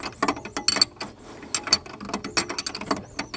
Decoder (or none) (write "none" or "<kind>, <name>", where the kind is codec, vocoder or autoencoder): none